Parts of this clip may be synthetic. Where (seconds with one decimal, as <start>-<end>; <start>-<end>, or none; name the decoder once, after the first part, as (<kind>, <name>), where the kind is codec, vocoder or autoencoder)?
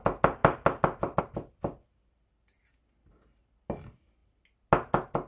none